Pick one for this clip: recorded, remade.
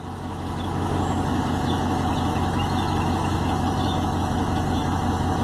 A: remade